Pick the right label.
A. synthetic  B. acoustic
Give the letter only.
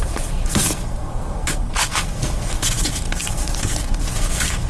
A